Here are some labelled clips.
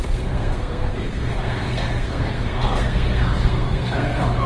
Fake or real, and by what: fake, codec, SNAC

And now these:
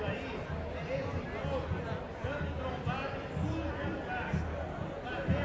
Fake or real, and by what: real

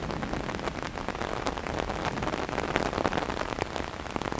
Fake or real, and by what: real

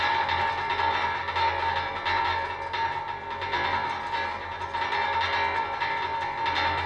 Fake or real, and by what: real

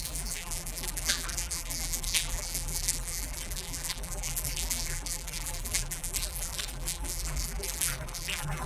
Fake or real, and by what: fake, vocoder, BigVGAN v2